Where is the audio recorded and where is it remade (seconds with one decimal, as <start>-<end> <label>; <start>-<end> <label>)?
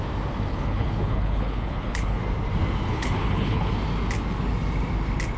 0.0-0.5 recorded; 0.5-2.2 remade; 2.2-2.9 recorded; 2.9-3.7 remade; 3.7-5.4 recorded